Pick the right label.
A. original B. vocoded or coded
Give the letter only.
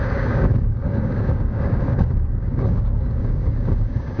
B